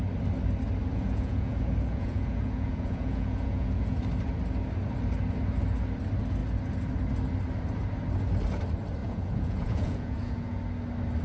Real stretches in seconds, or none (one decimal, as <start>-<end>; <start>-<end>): 0.0-0.9; 4.0-9.0; 10.6-11.2